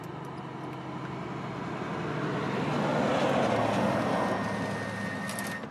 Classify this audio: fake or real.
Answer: real